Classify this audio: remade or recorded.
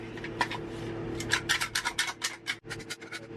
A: recorded